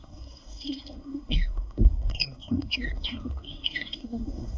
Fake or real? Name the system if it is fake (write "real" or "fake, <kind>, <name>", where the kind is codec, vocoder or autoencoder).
fake, codec, SNAC